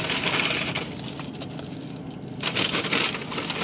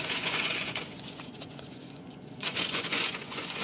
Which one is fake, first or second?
second